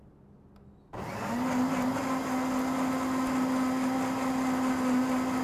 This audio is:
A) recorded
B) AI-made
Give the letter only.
A